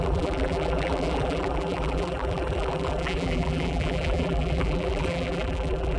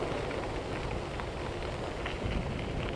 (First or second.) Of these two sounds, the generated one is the first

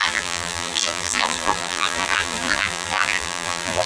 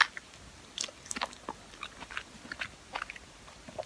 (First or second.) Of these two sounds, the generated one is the first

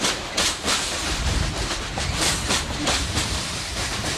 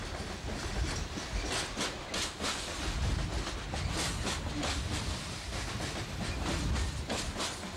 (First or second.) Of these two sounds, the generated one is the first